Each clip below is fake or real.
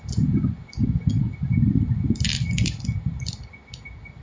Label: real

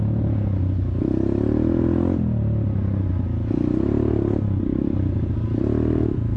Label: real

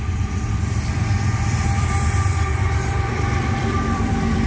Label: fake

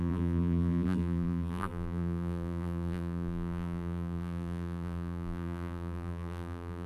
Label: fake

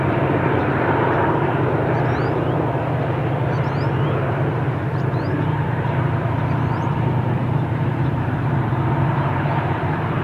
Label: fake